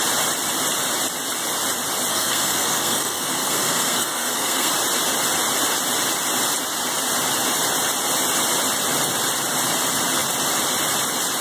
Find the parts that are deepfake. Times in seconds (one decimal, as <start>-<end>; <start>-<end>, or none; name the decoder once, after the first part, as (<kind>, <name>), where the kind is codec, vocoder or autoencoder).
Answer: 2.1-4.7 (codec, SNAC)